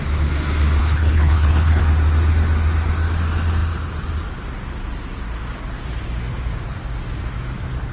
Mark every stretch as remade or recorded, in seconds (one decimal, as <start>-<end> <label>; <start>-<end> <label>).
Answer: 0.0-0.8 recorded; 0.8-1.8 remade; 1.8-7.9 recorded